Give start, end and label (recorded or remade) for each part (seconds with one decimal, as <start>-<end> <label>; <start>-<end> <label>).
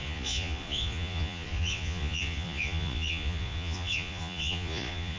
0.0-5.2 remade